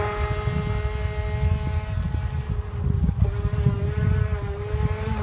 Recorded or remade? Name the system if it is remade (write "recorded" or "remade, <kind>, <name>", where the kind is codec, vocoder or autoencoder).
recorded